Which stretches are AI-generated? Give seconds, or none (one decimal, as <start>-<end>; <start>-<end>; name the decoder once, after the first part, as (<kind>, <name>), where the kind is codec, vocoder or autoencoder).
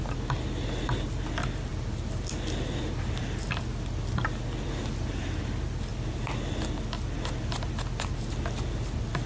none